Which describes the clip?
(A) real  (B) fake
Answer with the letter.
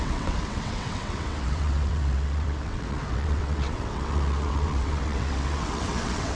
B